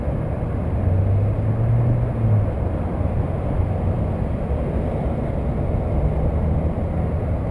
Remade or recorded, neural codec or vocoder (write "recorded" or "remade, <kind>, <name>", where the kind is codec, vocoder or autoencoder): recorded